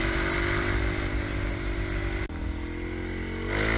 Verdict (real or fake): real